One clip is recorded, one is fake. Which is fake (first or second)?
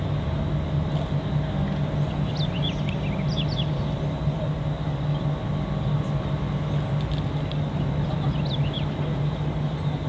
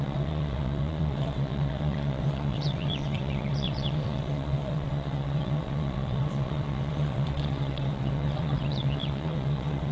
second